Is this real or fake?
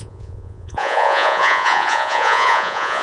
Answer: fake